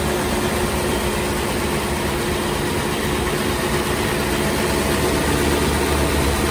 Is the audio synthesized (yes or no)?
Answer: no